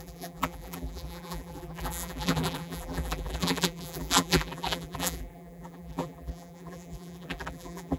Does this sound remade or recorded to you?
remade